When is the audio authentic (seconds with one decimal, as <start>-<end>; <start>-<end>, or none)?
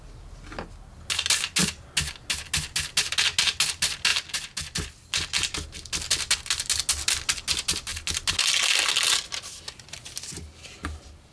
0.0-11.3